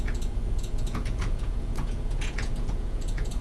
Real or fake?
fake